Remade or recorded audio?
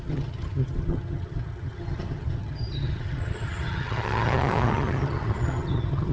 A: remade